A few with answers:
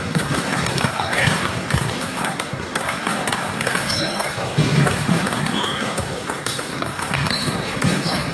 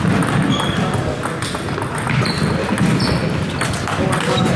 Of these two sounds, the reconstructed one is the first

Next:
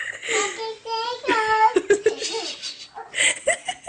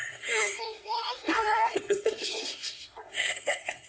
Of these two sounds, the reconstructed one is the second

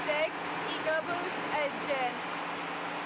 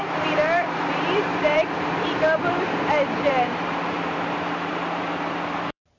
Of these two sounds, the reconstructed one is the second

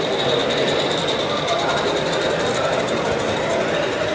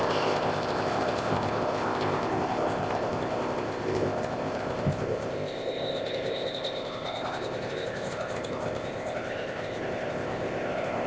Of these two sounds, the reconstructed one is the second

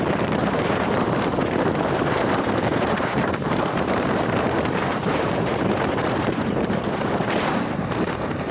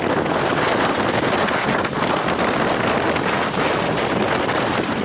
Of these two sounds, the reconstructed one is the first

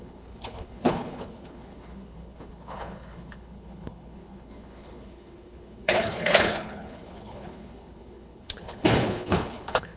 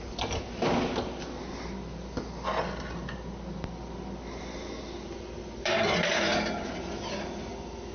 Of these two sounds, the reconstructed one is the first